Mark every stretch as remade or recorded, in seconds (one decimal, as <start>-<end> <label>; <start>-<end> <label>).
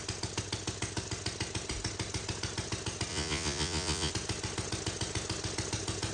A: 0.0-3.1 recorded; 3.1-4.1 remade; 4.1-6.1 recorded